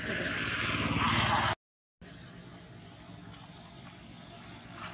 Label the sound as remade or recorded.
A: recorded